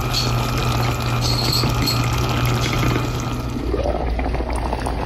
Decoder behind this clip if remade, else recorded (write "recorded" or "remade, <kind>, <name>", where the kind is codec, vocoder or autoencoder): recorded